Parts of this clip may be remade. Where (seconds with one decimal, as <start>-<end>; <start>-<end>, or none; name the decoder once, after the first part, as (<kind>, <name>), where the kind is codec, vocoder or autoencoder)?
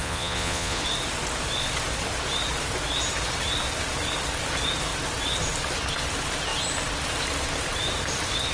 0.0-0.8 (vocoder, Vocos)